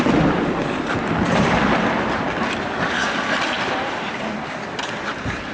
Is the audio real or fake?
fake